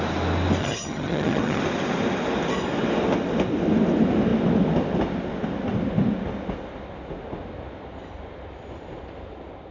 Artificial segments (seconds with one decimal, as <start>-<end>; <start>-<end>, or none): 0.6-1.6